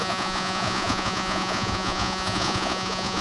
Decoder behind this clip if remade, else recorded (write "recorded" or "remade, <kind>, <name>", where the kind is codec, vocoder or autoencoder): remade, vocoder, Vocos